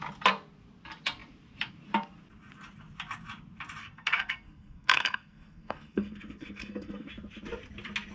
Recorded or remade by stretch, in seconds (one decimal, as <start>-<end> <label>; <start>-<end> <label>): 0.0-3.8 recorded; 3.8-7.1 remade; 7.1-8.1 recorded